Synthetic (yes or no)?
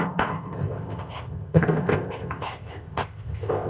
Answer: yes